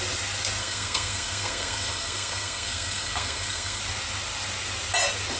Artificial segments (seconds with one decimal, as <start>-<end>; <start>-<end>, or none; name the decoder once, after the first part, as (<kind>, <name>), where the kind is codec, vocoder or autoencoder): 0.6-3.8 (codec, SNAC)